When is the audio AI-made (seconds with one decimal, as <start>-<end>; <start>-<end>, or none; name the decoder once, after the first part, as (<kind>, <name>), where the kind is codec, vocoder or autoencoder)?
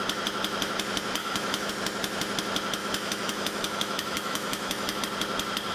1.2-1.7 (autoencoder, DAC-VAE); 2.8-5.0